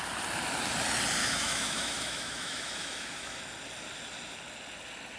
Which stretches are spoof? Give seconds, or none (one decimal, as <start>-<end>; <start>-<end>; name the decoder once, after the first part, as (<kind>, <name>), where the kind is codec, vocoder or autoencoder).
1.2-3.4 (autoencoder, DAC-VAE)